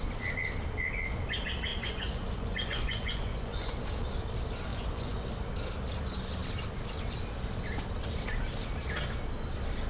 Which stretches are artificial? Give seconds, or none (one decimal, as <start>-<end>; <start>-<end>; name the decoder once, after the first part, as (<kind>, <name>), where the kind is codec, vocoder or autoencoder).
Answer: 1.7-3.7 (vocoder, Vocos); 4.7-5.3